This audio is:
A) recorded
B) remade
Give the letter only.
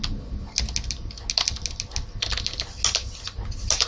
A